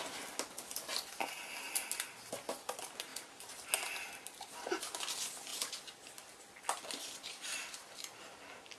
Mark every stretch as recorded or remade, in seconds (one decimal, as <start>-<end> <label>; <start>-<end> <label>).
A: 0.0-8.8 recorded